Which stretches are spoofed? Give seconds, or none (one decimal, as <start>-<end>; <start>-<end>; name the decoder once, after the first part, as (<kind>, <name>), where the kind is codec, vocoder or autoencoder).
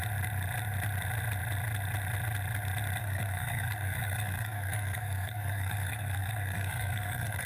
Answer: 3.0-7.5 (codec, SNAC)